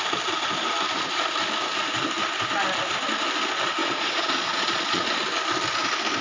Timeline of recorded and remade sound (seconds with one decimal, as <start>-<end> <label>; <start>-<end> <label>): 0.0-3.8 recorded; 3.8-5.1 remade; 5.1-6.2 recorded